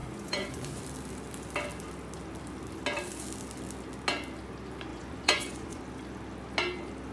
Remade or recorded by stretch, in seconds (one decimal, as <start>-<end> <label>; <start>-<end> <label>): 0.0-0.8 remade; 0.8-4.9 recorded; 4.9-5.8 remade; 5.8-7.1 recorded